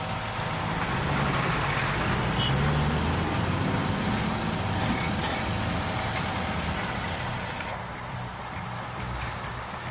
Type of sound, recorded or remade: recorded